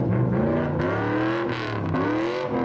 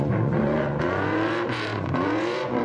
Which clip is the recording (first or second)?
first